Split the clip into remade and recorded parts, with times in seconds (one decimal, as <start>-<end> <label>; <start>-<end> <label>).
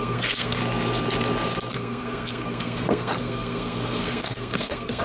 0.0-0.6 remade; 0.6-1.7 recorded; 1.7-5.0 remade